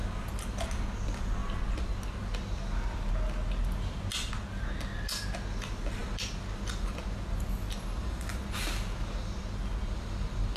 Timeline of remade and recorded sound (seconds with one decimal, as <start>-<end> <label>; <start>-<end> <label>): 0.0-10.6 recorded